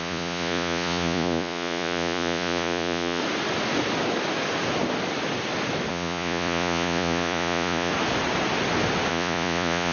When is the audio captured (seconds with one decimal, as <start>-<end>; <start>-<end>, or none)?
3.2-5.9; 7.9-9.1

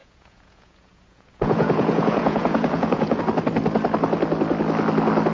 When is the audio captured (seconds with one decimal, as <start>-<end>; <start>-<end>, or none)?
3.2-5.3

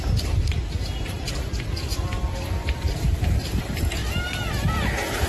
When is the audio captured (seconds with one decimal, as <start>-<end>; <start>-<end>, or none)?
0.0-2.6; 3.5-4.0; 4.7-5.3

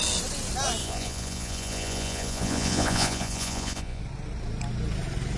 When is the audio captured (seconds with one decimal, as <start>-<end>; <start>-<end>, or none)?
0.0-0.8; 4.0-5.4

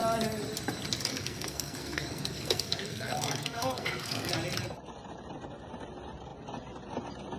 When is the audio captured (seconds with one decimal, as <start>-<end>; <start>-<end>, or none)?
0.0-1.1; 4.3-7.4

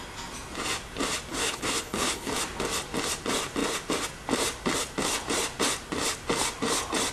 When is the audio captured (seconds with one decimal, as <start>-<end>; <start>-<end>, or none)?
0.0-1.3; 2.3-7.1